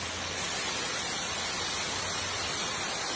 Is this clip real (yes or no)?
yes